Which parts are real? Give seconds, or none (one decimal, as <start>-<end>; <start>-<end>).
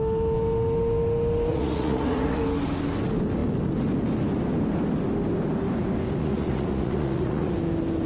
0.0-1.5; 2.4-6.2; 7.5-8.1